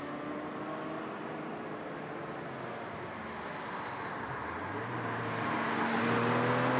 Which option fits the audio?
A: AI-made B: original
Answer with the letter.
B